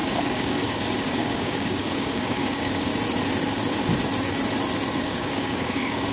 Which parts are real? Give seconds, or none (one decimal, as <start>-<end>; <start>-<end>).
2.9-4.9